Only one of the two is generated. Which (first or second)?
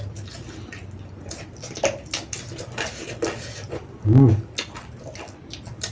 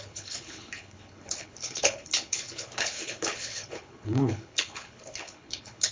second